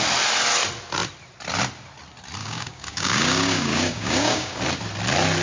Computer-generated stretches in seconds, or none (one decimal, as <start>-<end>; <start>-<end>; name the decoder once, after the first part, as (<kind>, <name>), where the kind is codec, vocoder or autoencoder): 2.4-4.6 (codec, DAC)

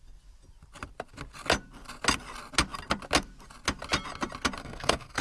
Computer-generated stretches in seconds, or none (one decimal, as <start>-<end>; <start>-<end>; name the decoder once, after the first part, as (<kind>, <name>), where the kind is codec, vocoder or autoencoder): 4.6-5.2 (codec, SNAC)

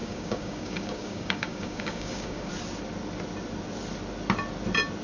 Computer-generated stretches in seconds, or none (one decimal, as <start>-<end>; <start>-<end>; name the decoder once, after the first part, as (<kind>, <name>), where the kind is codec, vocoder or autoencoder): 0.0-2.5 (codec, DAC)

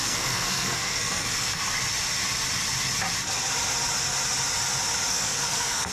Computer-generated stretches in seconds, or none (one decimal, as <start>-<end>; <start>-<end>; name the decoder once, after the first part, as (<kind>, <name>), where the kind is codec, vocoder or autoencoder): 0.0-1.6 (codec, SNAC); 5.1-5.9

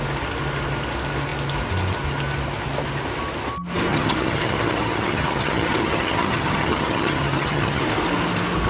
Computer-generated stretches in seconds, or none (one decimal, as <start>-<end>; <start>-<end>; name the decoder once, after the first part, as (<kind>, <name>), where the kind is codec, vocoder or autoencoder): 3.9-7.8 (vocoder, HiFi-GAN)